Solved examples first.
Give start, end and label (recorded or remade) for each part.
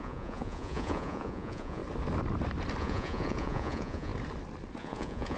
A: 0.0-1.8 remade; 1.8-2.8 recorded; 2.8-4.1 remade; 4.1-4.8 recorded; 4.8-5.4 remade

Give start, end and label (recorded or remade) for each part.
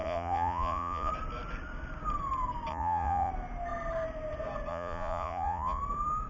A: 0.0-1.1 remade; 1.1-2.7 recorded; 2.7-3.3 remade; 3.3-4.7 recorded; 4.7-5.8 remade; 5.8-6.3 recorded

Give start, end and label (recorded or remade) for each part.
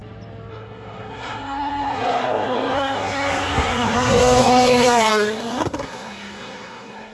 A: 0.0-0.5 recorded; 0.5-7.1 remade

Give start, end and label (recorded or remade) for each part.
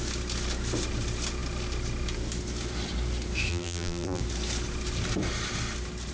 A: 0.0-3.5 recorded; 3.5-4.2 remade; 4.2-6.1 recorded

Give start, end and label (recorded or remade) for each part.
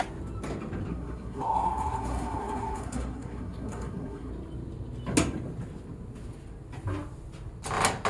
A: 0.0-0.9 recorded; 0.9-4.3 remade; 4.3-8.1 recorded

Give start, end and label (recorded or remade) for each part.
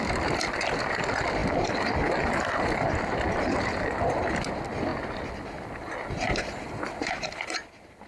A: 0.0-8.1 recorded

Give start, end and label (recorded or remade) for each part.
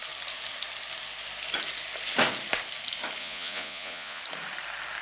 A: 0.0-3.2 recorded; 3.2-4.2 remade; 4.2-5.0 recorded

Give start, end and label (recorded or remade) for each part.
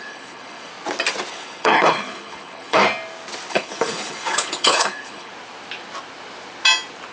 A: 0.0-0.7 remade; 0.7-1.3 recorded; 1.3-2.8 remade; 2.8-3.5 recorded; 3.5-5.3 remade; 5.3-7.1 recorded